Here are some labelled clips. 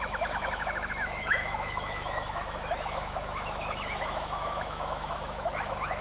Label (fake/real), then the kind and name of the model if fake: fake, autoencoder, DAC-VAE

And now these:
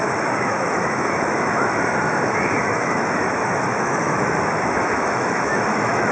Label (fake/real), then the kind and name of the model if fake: fake, autoencoder, DAC-VAE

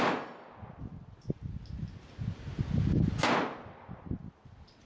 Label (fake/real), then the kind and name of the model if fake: real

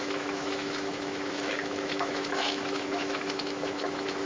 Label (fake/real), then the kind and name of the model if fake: fake, autoencoder, DAC-VAE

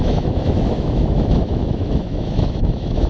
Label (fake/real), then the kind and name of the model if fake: fake, autoencoder, DAC-VAE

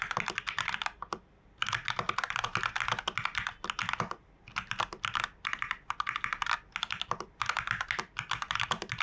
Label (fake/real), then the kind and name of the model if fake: real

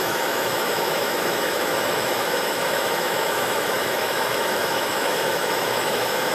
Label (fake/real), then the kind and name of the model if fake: fake, autoencoder, DAC-VAE